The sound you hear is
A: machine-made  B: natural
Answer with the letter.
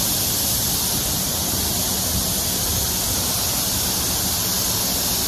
B